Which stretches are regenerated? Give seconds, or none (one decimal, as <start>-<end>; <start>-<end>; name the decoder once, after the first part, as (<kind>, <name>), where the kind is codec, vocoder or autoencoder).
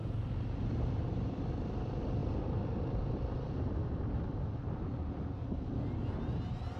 none